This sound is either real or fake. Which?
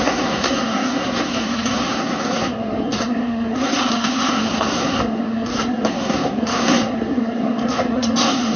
fake